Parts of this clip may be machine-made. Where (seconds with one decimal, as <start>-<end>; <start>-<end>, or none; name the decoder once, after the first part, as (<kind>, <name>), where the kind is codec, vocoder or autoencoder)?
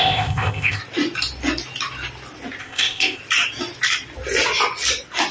0.0-0.8 (codec, ZipCodec); 2.6-3.2